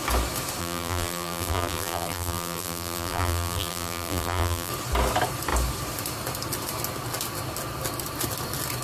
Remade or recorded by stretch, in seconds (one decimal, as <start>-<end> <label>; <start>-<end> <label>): 0.0-0.6 recorded; 0.6-4.7 remade; 4.7-8.8 recorded